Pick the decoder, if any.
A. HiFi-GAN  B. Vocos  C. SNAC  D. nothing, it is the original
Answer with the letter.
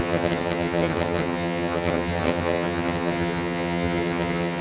A